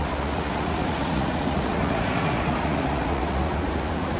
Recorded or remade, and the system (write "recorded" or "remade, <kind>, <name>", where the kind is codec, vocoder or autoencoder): remade, vocoder, Vocos